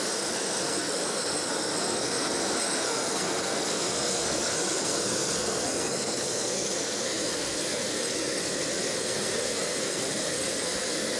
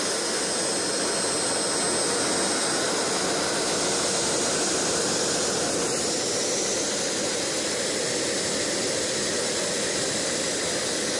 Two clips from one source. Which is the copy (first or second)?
first